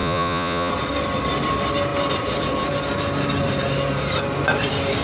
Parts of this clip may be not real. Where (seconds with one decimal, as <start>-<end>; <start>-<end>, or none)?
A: 0.0-0.7